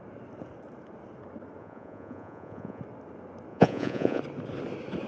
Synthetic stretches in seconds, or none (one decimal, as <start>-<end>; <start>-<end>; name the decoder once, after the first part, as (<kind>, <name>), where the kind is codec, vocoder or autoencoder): 1.6-2.8 (vocoder, Vocos); 3.5-4.2